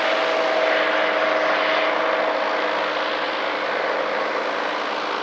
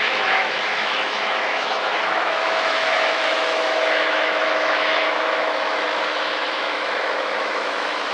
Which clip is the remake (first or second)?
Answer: second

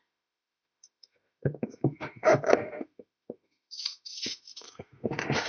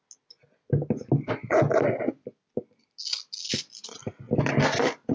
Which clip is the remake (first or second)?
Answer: first